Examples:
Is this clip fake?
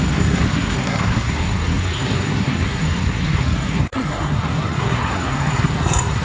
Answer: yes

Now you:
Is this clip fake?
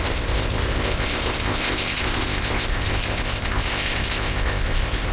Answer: yes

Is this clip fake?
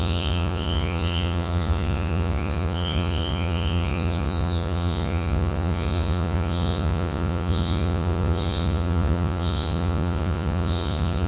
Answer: yes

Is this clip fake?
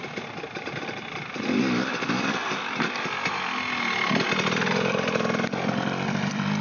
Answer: no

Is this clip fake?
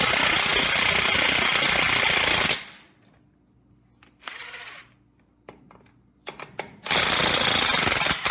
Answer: no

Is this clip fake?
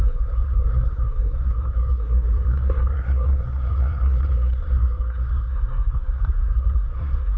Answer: yes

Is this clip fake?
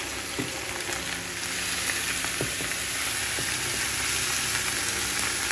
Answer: no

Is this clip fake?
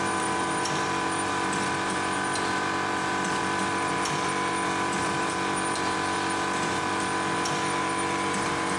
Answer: yes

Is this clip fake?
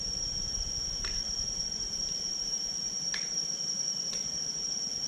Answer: yes